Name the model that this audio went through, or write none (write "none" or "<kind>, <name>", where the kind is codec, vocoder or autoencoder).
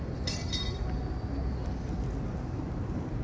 none